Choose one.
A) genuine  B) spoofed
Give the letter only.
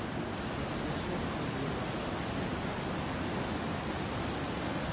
A